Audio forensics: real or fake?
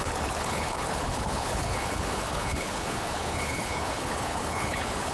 fake